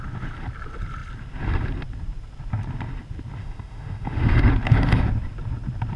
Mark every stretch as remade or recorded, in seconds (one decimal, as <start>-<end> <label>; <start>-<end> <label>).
0.0-3.4 recorded; 3.4-4.5 remade; 4.5-6.0 recorded